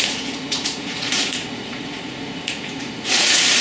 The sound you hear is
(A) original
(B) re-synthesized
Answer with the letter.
B